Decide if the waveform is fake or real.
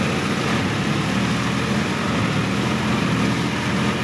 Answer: real